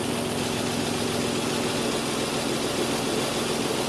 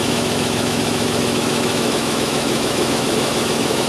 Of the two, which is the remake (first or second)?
second